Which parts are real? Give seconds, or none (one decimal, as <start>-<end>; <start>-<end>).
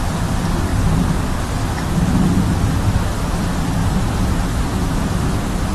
0.7-2.6